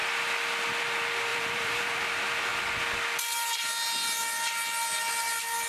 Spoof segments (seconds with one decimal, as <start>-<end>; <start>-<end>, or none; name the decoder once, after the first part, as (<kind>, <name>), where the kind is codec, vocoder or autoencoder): 1.3-2.0 (vocoder, BigVGAN v2)